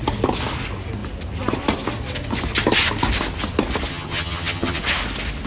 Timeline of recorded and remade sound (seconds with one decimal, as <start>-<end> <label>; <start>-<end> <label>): 0.0-3.9 recorded; 3.9-4.8 remade; 4.8-5.5 recorded